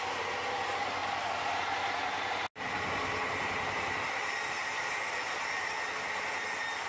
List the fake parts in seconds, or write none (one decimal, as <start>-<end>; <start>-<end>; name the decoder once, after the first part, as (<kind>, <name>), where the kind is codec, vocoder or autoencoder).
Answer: none